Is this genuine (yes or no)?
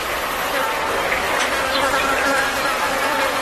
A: yes